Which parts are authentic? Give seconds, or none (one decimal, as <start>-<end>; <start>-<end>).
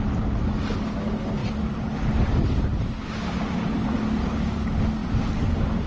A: 0.0-2.7; 3.4-5.9